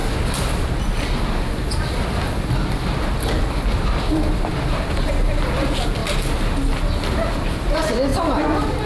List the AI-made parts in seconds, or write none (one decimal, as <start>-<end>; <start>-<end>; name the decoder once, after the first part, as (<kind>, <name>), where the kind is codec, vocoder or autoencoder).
none